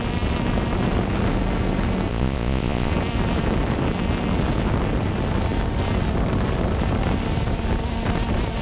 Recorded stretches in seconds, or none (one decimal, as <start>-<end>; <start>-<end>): 0.0-2.1; 2.9-8.6